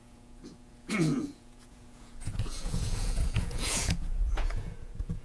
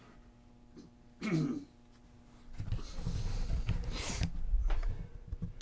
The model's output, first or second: first